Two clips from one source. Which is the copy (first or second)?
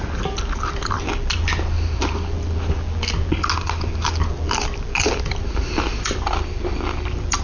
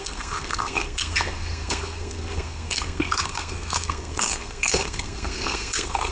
second